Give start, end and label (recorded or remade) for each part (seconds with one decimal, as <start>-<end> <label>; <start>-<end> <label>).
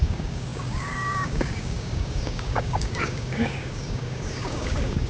0.0-5.1 remade